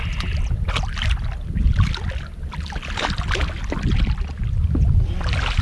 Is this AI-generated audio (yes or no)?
no